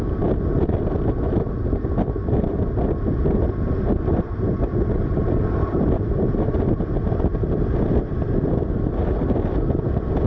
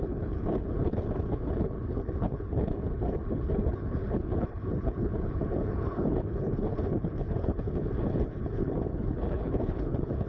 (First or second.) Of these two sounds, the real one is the first